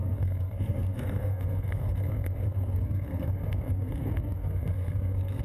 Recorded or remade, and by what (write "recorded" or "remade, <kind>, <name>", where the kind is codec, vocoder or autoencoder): remade, codec, SNAC